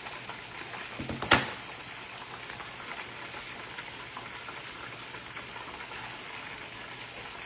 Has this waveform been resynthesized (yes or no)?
no